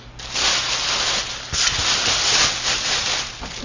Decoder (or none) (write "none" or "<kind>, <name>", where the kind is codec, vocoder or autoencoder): none